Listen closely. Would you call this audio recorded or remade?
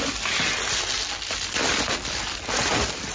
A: recorded